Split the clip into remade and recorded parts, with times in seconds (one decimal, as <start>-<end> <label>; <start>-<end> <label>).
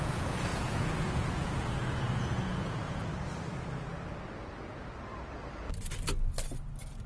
0.0-3.1 remade; 3.1-7.1 recorded